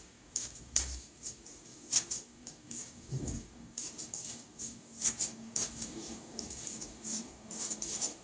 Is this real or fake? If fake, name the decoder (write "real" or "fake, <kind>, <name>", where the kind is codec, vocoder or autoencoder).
fake, codec, DAC